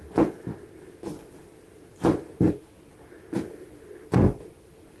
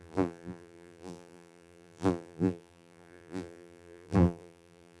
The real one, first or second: first